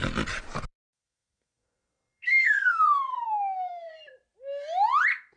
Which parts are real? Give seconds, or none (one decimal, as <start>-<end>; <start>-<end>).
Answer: 0.0-0.7; 3.9-5.4